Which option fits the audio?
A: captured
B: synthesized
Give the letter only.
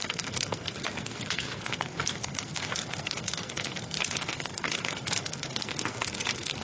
B